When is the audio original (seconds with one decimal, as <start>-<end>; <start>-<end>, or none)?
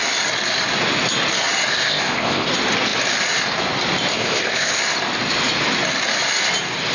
0.0-1.7; 2.5-4.1; 4.8-6.9